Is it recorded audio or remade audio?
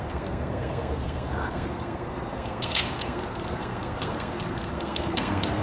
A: remade